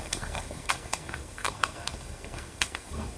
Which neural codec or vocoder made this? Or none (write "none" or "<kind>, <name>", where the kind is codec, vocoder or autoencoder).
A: codec, SNAC